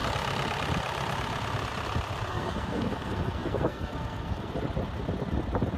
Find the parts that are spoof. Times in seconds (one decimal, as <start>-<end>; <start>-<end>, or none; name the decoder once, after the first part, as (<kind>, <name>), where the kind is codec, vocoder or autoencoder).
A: 2.3-4.5 (codec, SNAC)